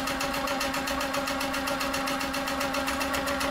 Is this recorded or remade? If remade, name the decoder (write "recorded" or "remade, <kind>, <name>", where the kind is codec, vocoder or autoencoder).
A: recorded